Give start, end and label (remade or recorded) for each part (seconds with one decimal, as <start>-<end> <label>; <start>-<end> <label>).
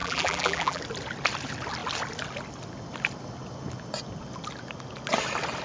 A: 0.0-0.8 remade; 0.8-5.6 recorded